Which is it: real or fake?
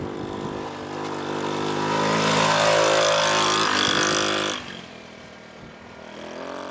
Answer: real